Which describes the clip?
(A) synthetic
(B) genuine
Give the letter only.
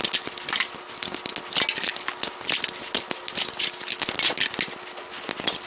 B